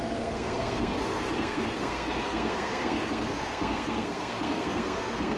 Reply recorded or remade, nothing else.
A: remade